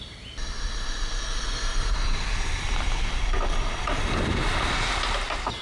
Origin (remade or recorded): recorded